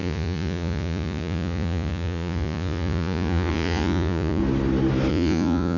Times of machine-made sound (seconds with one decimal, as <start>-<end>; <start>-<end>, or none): 0.0-4.4; 5.1-5.8